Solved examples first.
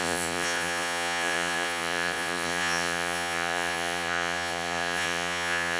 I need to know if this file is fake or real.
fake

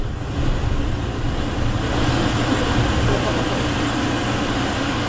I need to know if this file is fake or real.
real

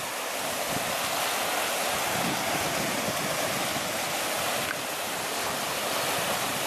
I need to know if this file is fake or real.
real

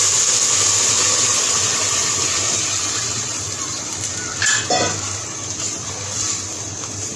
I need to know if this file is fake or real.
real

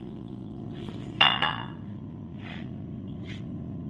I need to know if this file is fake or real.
fake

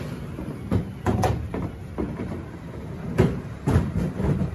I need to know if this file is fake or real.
fake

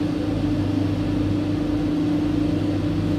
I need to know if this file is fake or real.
real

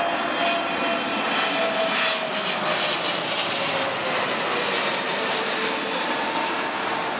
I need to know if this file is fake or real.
real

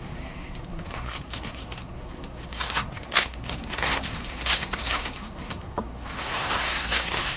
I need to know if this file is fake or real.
fake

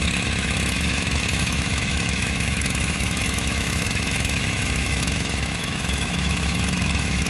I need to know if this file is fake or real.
fake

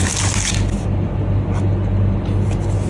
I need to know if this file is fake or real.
real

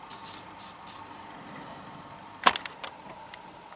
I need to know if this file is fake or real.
real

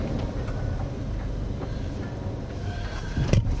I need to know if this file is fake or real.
fake